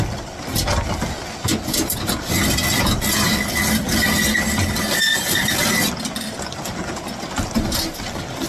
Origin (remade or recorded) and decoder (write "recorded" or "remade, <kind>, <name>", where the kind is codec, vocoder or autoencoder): recorded